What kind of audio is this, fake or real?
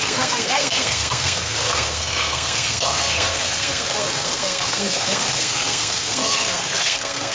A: fake